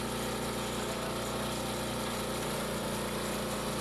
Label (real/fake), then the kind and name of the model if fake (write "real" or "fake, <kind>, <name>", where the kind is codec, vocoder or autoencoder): real